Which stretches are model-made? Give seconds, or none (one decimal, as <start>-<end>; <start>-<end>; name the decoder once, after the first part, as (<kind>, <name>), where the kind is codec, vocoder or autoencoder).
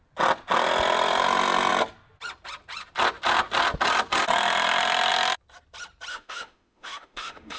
6.1-7.6 (autoencoder, DAC-VAE)